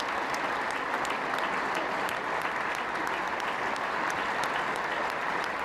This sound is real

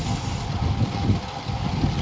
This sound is real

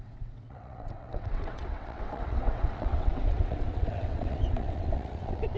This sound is fake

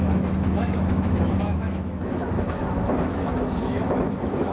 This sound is fake